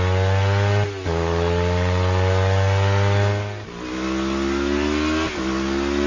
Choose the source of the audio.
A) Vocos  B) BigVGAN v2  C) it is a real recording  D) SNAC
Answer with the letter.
C